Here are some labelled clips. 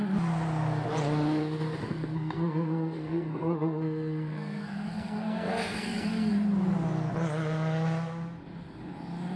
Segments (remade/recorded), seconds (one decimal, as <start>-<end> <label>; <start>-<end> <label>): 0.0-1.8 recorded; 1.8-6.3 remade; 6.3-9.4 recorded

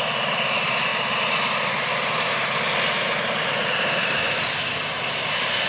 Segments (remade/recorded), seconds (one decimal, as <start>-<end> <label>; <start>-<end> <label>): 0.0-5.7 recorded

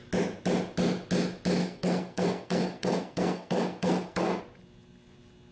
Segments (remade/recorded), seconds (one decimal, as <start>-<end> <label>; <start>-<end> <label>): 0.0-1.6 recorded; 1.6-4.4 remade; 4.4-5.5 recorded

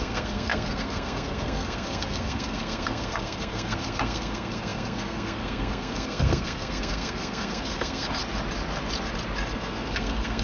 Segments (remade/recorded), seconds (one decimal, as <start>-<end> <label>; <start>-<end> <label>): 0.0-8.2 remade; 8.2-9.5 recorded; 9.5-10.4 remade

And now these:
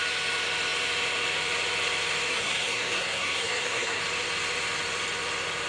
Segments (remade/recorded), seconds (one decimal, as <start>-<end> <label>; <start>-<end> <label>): 0.0-2.3 recorded; 2.3-4.0 remade; 4.0-5.7 recorded

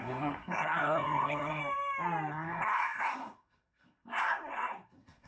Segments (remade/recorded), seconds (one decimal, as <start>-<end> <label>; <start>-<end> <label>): 0.0-1.6 remade; 1.6-2.3 recorded; 2.3-5.3 remade